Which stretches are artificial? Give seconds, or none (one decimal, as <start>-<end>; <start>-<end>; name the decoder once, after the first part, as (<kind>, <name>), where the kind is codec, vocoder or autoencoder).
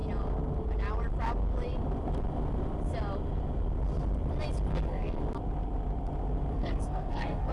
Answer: 4.7-5.2 (codec, SNAC); 6.5-7.5